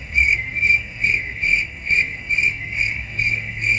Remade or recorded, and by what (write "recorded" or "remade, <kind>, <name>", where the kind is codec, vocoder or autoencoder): remade, codec, SNAC